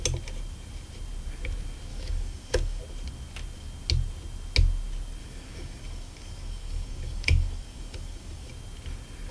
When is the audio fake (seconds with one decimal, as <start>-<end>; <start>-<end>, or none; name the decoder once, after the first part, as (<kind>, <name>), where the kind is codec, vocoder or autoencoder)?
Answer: 1.9-2.8 (codec, DAC); 5.2-8.5